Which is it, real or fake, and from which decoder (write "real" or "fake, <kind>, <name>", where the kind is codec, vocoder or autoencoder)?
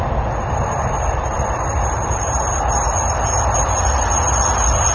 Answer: real